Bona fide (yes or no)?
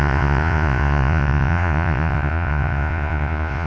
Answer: no